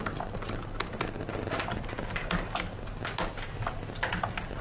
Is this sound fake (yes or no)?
no